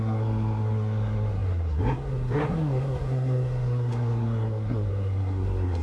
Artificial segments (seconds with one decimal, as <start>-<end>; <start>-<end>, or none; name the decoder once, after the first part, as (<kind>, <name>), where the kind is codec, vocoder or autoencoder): 0.0-5.8 (codec, SNAC)